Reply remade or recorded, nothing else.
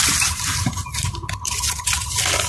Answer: recorded